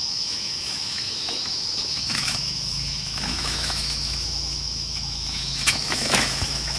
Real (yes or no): no